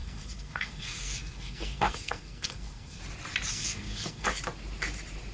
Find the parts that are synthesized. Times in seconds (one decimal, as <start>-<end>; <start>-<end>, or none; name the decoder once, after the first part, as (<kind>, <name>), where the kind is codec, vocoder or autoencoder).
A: 0.0-3.0 (codec, SNAC); 3.5-4.3